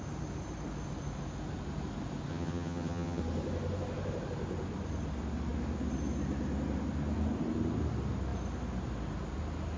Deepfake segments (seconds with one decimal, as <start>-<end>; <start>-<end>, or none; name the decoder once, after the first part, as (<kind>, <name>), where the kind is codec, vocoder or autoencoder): 2.3-3.2 (vocoder, HiFi-GAN)